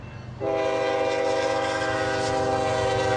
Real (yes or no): yes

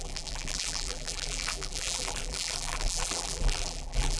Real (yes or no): no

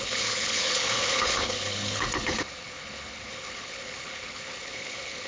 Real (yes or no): no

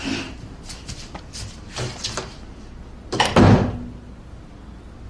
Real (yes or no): yes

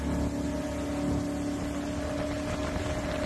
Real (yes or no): yes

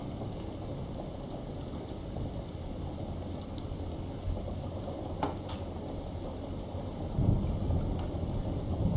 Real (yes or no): yes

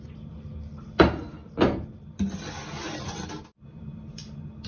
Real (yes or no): yes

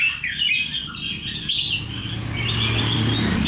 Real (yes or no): yes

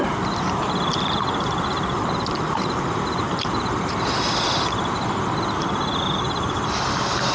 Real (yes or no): no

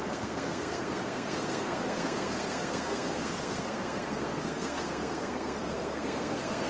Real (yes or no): no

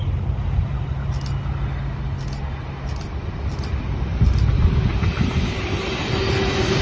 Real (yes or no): yes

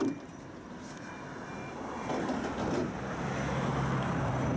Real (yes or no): yes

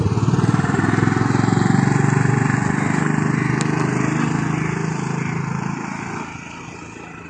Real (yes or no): yes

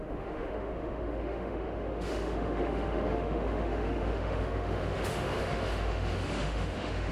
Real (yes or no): no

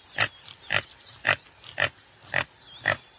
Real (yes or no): yes